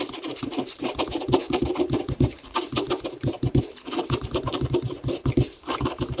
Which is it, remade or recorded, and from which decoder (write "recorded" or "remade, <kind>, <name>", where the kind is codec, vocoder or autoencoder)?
remade, vocoder, BigVGAN v2